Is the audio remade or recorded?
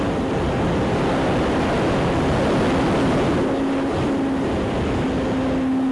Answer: recorded